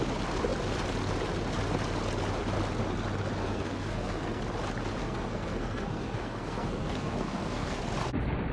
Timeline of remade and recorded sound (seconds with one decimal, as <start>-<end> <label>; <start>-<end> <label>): 0.0-3.4 recorded; 3.4-4.4 remade; 4.4-5.0 recorded; 5.0-7.8 remade; 7.8-8.5 recorded